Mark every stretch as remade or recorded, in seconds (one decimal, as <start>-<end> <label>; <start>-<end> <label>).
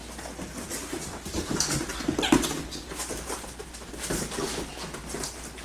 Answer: 0.0-5.6 recorded